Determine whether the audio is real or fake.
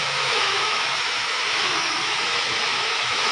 fake